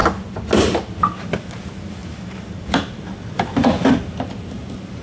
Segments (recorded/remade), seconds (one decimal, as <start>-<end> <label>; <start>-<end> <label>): 0.0-2.0 recorded; 2.0-2.9 remade; 2.9-5.0 recorded